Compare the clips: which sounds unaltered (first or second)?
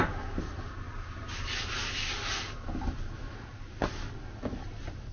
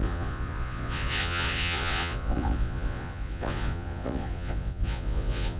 first